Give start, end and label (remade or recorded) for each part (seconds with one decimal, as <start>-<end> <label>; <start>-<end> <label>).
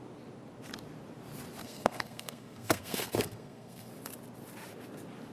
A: 0.0-1.6 recorded; 1.6-3.9 remade; 3.9-5.3 recorded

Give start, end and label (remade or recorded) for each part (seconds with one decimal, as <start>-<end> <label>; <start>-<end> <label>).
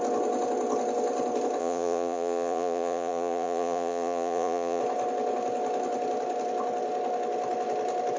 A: 0.0-1.6 recorded; 1.6-4.8 remade; 4.8-8.2 recorded